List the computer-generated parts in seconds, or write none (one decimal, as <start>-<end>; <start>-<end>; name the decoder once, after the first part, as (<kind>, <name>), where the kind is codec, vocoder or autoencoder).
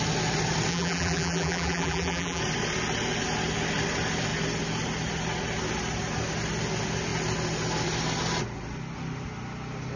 0.7-2.4 (vocoder, BigVGAN v2)